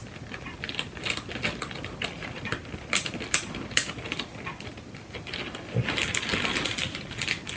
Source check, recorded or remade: recorded